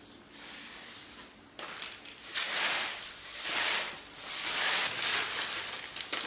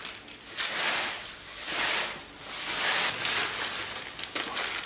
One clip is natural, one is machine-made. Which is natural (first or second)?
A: second